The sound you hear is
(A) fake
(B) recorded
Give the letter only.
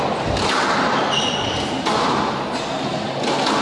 B